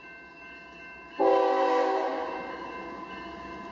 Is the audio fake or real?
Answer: real